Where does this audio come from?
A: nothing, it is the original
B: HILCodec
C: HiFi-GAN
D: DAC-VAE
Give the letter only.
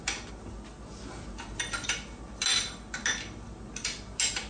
A